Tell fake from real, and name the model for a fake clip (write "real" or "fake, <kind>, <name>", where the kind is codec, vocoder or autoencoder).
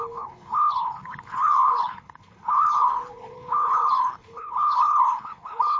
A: fake, codec, HILCodec